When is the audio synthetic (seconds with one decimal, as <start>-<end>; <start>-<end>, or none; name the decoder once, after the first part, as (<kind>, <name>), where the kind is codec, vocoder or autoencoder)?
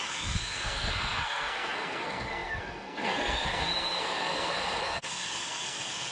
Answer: 0.0-6.1 (codec, SNAC)